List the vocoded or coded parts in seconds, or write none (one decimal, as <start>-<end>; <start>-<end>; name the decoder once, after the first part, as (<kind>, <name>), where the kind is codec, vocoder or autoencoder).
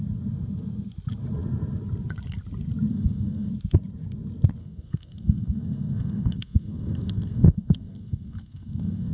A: 2.9-3.5 (codec, SNAC); 4.6-9.1